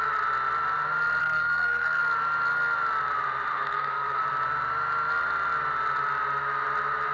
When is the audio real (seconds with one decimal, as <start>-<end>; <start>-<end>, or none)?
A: 0.0-1.2; 2.0-3.5; 4.2-7.1